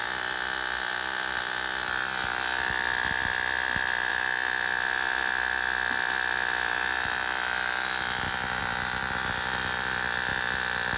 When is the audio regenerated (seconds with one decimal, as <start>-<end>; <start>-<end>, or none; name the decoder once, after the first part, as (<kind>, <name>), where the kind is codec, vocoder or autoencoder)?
none